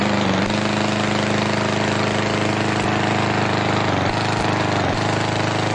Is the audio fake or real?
real